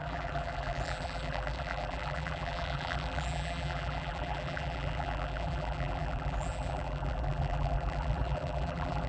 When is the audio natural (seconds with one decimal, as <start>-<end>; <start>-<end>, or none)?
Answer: none